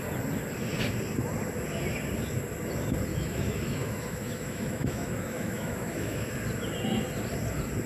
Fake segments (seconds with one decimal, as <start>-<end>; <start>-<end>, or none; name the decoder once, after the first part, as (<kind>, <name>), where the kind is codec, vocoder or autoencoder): 3.1-6.3 (autoencoder, DAC-VAE)